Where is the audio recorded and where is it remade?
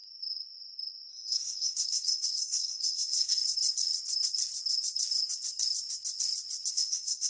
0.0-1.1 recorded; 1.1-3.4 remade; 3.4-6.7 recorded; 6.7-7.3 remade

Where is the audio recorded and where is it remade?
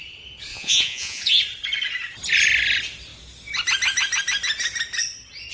0.0-0.5 recorded; 0.5-1.3 remade; 1.3-5.5 recorded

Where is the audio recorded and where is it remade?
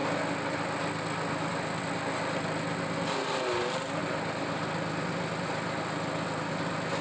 0.0-7.0 recorded